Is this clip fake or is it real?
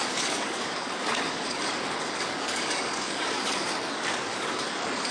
fake